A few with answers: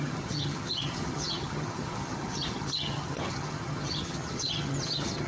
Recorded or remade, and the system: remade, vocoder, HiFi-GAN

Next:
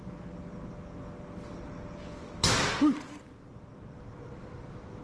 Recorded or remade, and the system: recorded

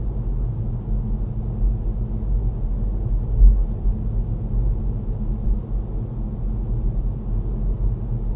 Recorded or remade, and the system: recorded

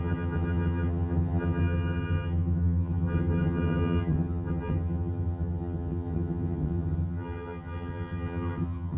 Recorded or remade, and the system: remade, vocoder, HiFi-GAN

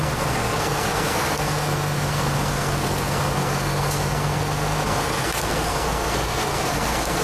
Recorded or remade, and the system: remade, codec, SNAC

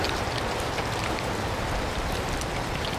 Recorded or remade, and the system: recorded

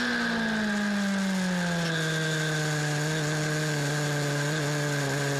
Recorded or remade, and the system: recorded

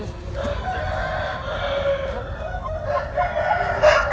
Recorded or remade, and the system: recorded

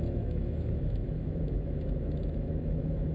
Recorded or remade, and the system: remade, autoencoder, DAC-VAE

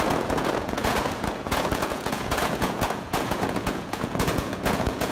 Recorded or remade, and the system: remade, vocoder, Vocos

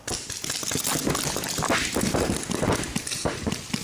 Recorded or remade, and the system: recorded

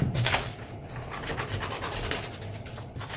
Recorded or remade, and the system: recorded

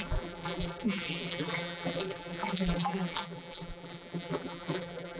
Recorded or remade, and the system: remade, vocoder, BigVGAN v2